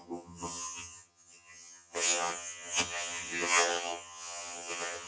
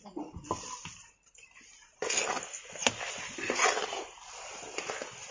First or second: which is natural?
second